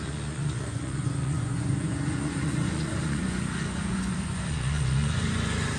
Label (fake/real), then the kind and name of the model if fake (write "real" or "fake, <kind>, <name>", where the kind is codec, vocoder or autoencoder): fake, vocoder, Vocos